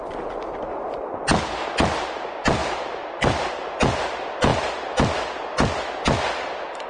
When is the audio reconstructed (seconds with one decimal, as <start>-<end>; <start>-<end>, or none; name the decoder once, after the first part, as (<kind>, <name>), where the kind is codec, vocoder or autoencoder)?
2.6-3.5 (vocoder, BigVGAN v2)